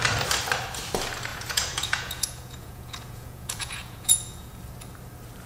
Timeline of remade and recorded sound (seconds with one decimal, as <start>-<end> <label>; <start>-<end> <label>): 0.0-1.3 recorded; 1.3-4.6 remade; 4.6-5.5 recorded